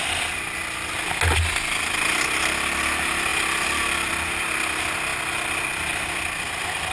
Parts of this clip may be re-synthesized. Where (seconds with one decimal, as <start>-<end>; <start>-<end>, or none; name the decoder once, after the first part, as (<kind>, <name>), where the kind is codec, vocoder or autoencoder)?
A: none